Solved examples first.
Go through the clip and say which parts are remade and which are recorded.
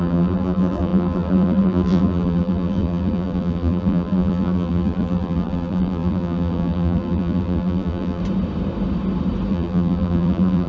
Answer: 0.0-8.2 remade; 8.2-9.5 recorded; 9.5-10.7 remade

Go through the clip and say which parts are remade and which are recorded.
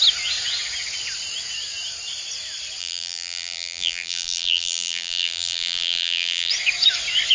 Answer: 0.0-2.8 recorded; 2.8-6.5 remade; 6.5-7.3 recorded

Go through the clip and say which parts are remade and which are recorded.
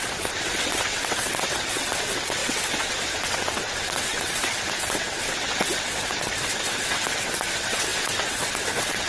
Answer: 0.0-9.1 remade